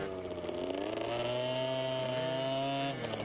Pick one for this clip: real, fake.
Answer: real